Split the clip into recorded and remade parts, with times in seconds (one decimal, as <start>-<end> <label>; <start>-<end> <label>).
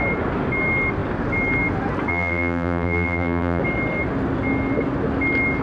0.0-2.1 recorded; 2.1-3.6 remade; 3.6-5.6 recorded